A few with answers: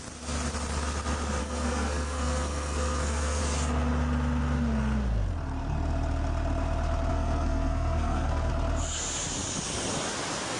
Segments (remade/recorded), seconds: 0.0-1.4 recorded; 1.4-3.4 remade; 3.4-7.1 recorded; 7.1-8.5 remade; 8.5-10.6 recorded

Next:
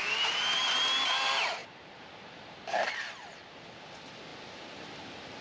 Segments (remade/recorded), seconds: 0.0-5.4 recorded

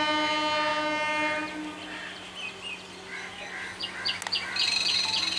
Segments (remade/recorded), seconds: 0.0-5.4 recorded